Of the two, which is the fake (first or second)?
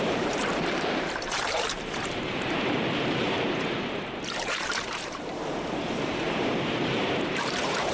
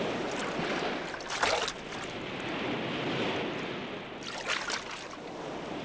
first